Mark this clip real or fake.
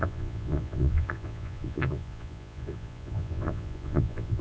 fake